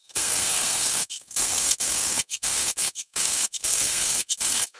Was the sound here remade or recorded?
remade